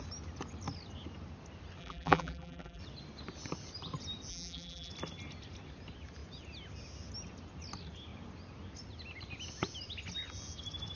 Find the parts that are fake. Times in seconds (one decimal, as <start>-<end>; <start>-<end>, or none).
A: 1.8-2.8; 4.3-4.9